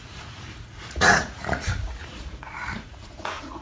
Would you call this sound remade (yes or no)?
yes